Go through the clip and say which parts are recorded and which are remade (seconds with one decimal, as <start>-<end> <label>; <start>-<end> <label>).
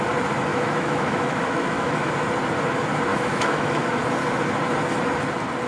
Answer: 0.0-0.5 recorded; 0.5-2.1 remade; 2.1-3.1 recorded; 3.1-4.1 remade; 4.1-5.7 recorded